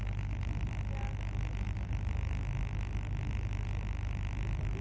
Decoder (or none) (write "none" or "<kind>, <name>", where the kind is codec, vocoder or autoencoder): none